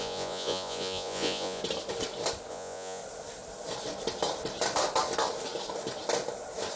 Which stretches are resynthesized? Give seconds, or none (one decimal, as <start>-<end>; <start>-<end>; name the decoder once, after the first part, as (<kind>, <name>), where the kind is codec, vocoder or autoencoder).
0.0-1.6 (vocoder, Vocos); 2.5-3.0